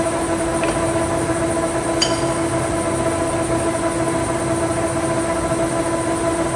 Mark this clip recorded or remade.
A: recorded